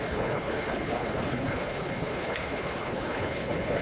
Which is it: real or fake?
fake